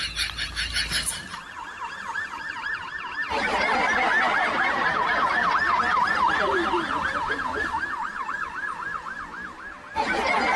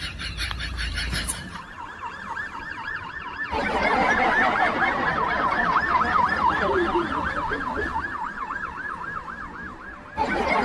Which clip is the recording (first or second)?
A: first